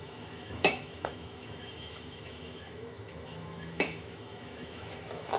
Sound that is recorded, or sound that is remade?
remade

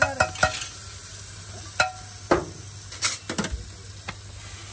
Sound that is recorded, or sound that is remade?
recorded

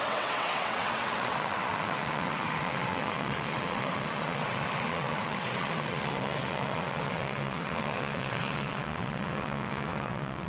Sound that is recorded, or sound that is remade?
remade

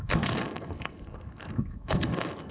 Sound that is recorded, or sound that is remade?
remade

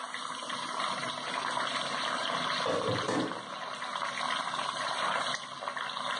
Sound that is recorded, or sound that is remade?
recorded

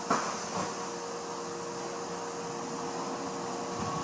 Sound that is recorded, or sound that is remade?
recorded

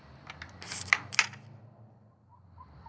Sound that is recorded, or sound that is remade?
recorded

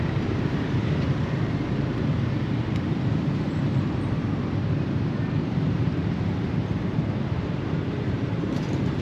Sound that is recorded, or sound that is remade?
remade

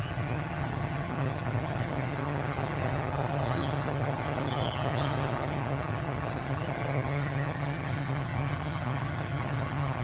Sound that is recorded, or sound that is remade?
remade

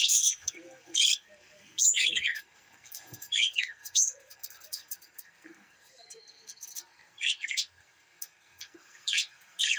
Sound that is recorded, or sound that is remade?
remade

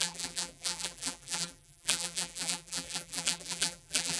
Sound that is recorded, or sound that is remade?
remade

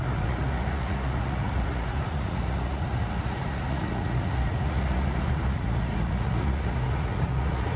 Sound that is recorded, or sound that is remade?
remade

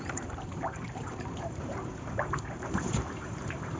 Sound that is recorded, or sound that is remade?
remade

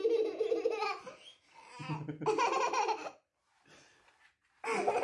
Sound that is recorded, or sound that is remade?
recorded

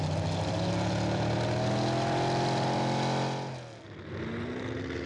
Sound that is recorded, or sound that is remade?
recorded